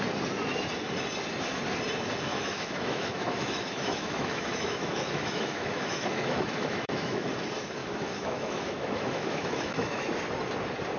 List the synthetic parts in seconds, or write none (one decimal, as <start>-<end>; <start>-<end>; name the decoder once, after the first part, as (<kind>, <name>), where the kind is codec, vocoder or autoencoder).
2.3-7.3 (autoencoder, DAC-VAE); 7.8-10.0